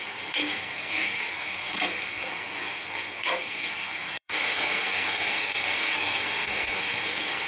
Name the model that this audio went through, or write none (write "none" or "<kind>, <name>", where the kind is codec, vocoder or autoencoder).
codec, SNAC